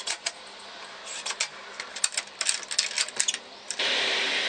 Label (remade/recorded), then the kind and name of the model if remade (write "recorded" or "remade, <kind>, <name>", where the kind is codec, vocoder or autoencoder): recorded